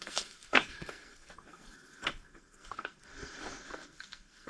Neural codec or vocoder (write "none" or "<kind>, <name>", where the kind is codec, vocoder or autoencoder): codec, SNAC